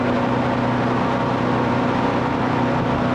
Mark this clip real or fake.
real